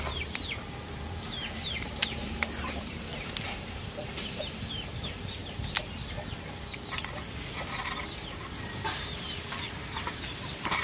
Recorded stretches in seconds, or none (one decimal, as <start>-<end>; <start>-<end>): 3.1-4.1; 5.4-9.7